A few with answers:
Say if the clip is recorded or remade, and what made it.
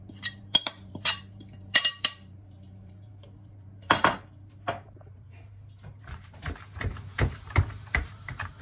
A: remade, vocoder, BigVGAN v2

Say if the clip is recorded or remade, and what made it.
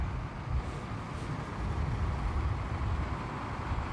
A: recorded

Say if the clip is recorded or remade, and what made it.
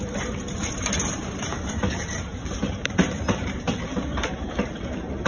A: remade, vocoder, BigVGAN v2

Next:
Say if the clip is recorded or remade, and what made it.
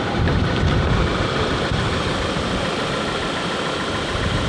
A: remade, vocoder, BigVGAN v2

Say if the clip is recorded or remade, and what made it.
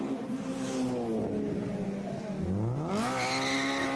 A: recorded